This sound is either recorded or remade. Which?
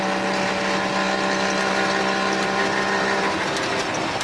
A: recorded